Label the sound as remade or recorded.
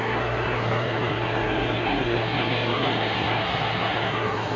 remade